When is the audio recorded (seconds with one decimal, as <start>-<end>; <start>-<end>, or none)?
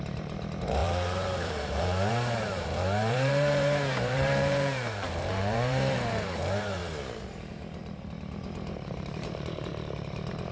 6.8-7.5; 9.7-10.5